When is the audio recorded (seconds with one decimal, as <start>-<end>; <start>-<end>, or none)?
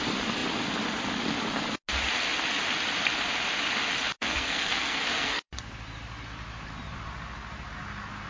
0.0-4.2; 5.5-8.3